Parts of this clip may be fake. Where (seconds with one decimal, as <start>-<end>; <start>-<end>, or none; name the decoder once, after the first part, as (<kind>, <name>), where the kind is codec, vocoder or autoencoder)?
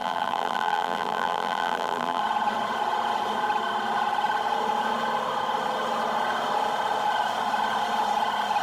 0.0-2.2 (vocoder, BigVGAN v2)